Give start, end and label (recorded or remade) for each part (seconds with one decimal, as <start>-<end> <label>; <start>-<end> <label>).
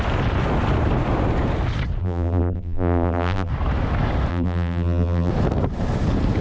0.0-2.0 recorded; 2.0-3.5 remade; 3.5-4.3 recorded; 4.3-5.3 remade; 5.3-6.4 recorded